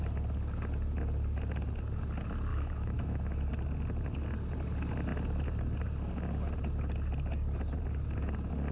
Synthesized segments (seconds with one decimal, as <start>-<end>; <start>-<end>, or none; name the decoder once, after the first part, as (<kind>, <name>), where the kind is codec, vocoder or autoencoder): 2.5-3.5 (autoencoder, DAC-VAE)